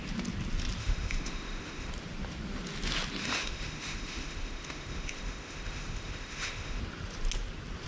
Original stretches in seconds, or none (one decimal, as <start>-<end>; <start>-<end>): 0.0-0.8; 1.9-3.2; 6.8-7.9